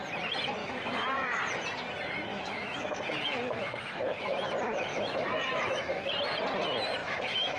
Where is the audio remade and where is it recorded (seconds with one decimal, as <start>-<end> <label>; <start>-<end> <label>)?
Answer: 0.0-0.6 recorded; 0.6-1.4 remade; 1.4-2.3 recorded; 2.3-4.2 remade; 4.2-4.9 recorded; 4.9-6.1 remade; 6.1-7.0 recorded; 7.0-7.6 remade